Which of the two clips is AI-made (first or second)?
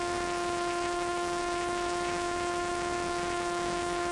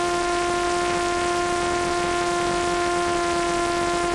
first